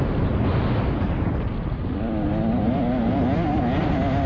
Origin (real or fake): real